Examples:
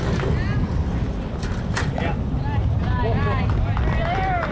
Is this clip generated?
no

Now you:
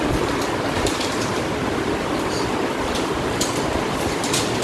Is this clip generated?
no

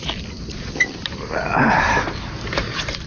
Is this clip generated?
no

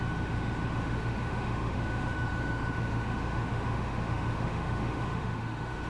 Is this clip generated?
yes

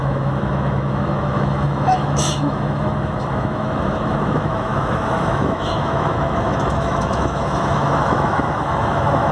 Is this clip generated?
yes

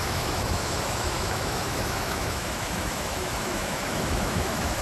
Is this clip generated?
yes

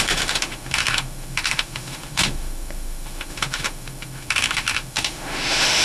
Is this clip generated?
yes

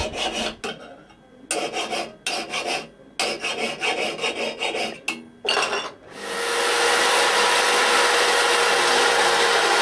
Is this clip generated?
no